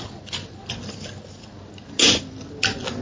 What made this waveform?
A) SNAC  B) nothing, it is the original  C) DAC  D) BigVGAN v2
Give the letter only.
B